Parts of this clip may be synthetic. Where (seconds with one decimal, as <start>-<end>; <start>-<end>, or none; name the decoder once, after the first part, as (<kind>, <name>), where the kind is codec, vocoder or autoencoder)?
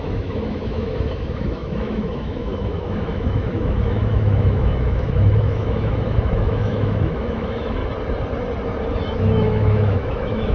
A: 0.0-7.8 (autoencoder, DAC-VAE); 9.0-10.5